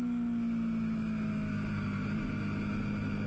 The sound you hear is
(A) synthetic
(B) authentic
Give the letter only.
B